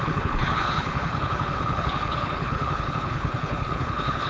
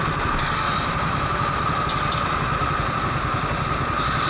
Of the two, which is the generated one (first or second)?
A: first